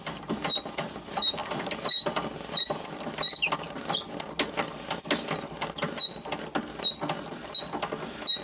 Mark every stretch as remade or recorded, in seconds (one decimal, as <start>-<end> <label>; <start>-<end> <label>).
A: 0.0-1.4 recorded; 1.4-2.9 remade; 2.9-8.4 recorded